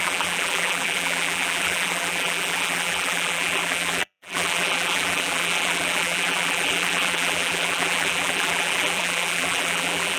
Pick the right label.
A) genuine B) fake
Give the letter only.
B